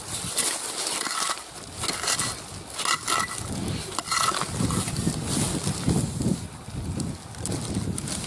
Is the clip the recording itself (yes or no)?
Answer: yes